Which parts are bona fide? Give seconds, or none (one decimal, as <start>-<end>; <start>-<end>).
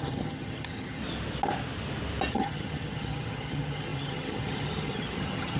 1.0-2.3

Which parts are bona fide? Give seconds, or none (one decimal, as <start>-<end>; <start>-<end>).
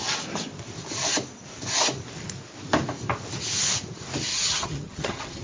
0.0-4.3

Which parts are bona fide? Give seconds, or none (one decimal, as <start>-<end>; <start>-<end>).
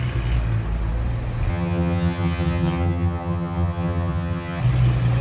0.0-1.5; 4.6-5.2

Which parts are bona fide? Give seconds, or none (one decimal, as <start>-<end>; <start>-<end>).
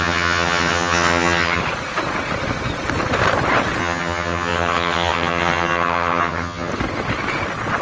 1.6-3.8; 6.7-7.8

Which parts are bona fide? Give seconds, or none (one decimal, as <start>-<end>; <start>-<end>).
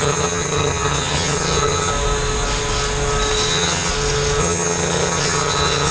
1.9-3.5; 3.9-4.4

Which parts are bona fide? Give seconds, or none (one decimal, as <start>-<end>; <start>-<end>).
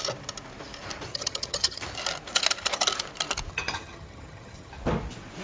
0.0-1.1; 1.8-3.5; 4.7-5.4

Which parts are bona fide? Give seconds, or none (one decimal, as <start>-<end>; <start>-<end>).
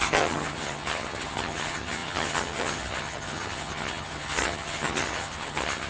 none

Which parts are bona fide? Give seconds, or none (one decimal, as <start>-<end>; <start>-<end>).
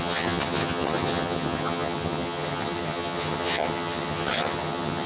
none